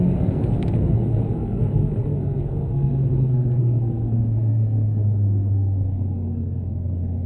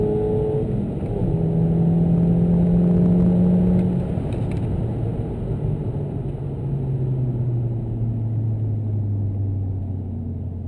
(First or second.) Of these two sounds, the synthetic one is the first